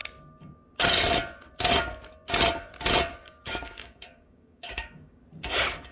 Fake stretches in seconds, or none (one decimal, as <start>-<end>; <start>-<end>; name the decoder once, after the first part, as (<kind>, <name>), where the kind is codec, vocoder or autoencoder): 3.1-5.2 (codec, DAC)